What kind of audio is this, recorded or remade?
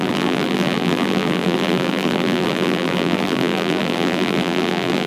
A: remade